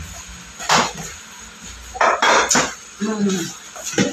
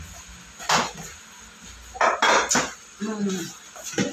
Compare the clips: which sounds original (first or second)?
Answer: second